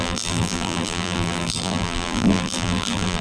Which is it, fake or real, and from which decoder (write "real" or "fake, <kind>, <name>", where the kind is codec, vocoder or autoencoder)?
fake, vocoder, BigVGAN v2